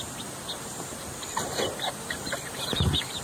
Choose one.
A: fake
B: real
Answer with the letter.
A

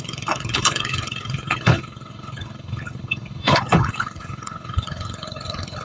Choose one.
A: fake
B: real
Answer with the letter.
A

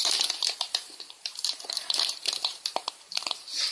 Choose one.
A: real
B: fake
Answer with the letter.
B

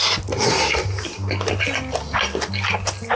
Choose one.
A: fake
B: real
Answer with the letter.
B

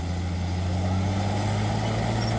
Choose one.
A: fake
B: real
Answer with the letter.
B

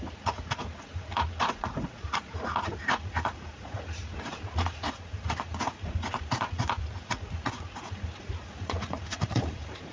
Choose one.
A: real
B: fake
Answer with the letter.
B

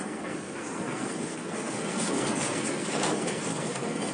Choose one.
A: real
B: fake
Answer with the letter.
B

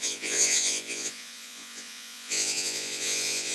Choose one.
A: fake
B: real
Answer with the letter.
A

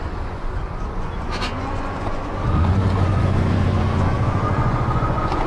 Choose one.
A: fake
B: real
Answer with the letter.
A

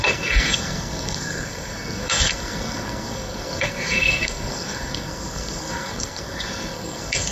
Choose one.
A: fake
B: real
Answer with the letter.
A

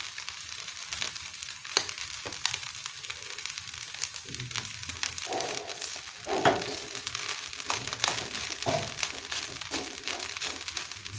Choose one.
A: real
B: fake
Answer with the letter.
A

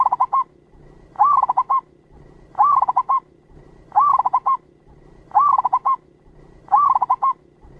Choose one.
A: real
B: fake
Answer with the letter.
B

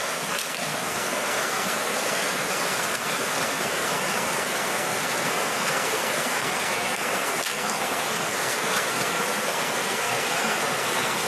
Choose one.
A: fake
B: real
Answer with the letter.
A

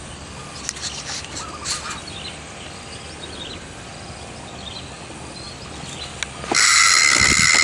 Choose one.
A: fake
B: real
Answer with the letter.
B